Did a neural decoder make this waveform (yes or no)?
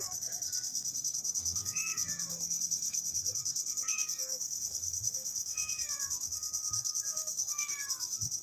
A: yes